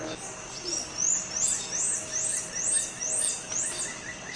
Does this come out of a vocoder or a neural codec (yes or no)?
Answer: no